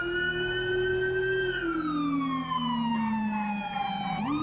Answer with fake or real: real